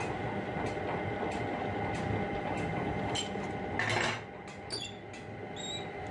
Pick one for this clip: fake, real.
real